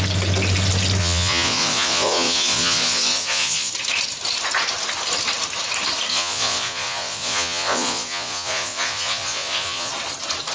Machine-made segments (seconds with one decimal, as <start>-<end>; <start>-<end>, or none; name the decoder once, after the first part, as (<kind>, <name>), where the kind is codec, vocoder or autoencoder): 1.0-3.7 (vocoder, Vocos); 6.1-9.9

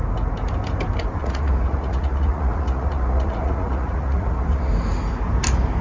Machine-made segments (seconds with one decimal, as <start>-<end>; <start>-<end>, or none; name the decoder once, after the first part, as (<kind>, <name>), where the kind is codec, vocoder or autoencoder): 1.2-4.7 (vocoder, Vocos)